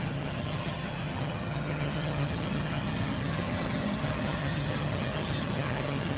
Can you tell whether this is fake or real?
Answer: fake